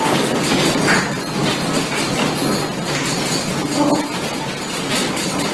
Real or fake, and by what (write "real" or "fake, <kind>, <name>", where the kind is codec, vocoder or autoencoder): real